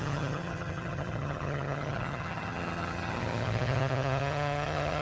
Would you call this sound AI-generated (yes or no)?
yes